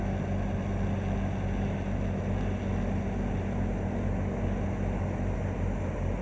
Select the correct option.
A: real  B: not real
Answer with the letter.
A